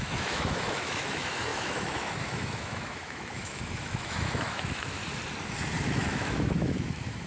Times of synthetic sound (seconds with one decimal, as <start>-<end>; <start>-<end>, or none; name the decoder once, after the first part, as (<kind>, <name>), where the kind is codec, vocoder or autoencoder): 0.0-5.0 (autoencoder, DAC-VAE); 5.8-7.3

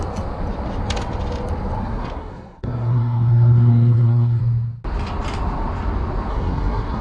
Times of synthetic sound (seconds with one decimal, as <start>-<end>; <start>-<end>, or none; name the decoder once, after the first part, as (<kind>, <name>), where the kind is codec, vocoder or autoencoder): 1.8-4.4 (codec, SNAC); 6.3-7.0